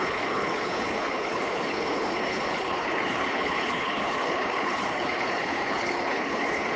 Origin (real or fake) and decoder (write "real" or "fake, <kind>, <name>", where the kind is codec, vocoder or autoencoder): fake, codec, HILCodec